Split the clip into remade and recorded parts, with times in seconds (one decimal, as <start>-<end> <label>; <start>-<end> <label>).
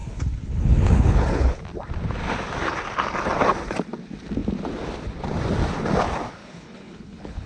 0.0-1.6 remade; 1.6-6.4 recorded; 6.4-7.5 remade